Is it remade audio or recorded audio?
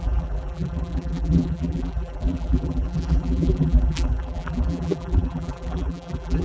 remade